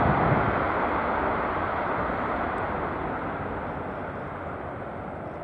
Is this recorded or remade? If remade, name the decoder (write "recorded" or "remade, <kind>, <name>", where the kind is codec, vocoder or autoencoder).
recorded